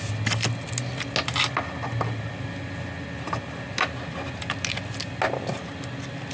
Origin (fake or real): real